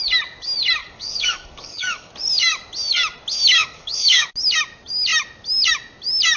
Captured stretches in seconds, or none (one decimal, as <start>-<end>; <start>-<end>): 0.0-0.8; 2.1-3.6; 4.3-6.4